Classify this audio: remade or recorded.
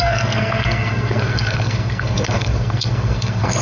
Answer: remade